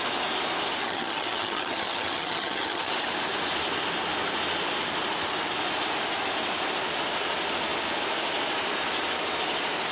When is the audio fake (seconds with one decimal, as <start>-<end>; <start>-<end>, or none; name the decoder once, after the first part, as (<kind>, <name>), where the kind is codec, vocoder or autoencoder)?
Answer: 0.8-2.9 (vocoder, HiFi-GAN)